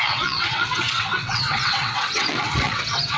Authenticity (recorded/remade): remade